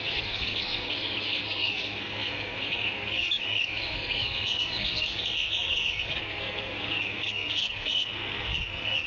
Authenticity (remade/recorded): remade